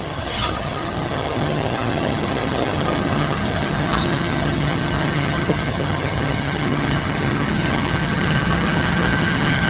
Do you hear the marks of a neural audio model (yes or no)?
yes